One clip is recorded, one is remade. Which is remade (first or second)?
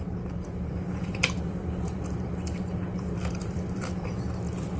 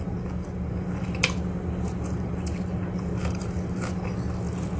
first